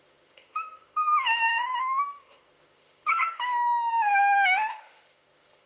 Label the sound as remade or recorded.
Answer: remade